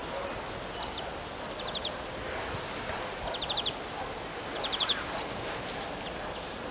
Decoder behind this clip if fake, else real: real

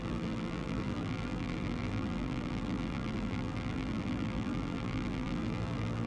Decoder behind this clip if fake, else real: fake, vocoder, BigVGAN v2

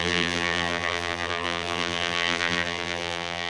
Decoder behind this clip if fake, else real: fake, vocoder, BigVGAN v2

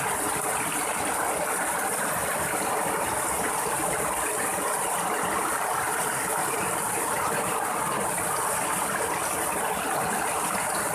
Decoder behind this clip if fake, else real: real